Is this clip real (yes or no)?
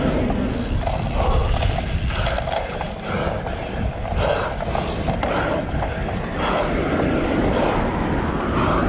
yes